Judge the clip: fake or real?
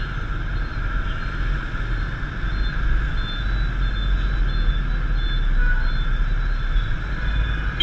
real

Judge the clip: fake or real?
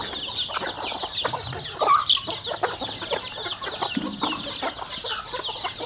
real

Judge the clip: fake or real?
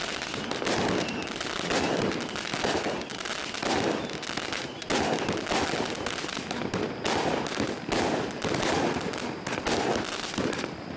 real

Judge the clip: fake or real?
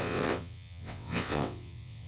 fake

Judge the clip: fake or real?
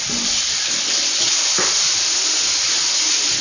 real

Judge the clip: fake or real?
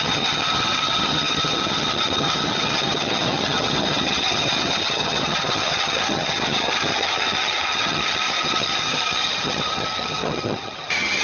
fake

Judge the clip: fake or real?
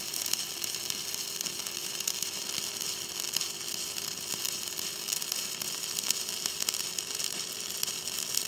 fake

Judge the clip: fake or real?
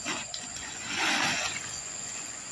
fake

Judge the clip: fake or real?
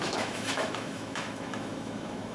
fake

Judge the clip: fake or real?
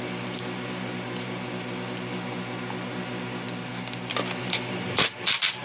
real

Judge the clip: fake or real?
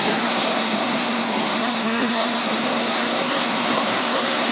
fake